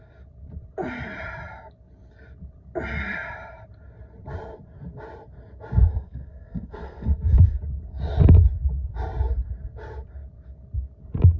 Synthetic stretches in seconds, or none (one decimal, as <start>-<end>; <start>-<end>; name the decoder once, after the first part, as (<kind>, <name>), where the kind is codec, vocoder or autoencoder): 5.9-7.6 (codec, SNAC)